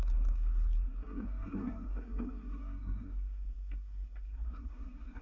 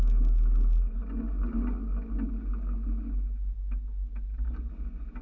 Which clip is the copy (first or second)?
first